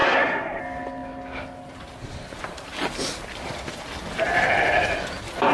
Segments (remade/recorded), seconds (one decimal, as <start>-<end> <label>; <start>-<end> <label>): 0.0-0.6 remade; 0.6-5.5 recorded